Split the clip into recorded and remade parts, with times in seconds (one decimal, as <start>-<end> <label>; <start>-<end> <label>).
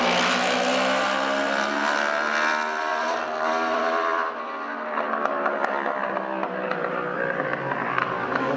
0.0-8.6 recorded